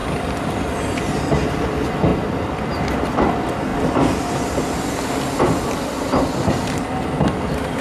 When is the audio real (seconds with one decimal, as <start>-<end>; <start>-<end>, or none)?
0.0-2.1; 2.7-3.7; 4.6-7.8